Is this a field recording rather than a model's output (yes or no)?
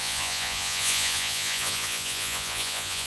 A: no